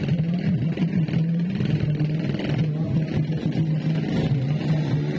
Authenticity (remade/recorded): recorded